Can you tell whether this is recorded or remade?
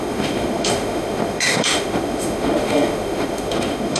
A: remade